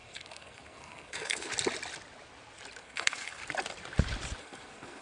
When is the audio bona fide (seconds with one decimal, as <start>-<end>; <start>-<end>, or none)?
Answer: 1.5-2.8; 3.4-4.4